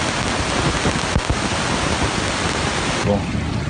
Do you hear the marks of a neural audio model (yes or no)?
no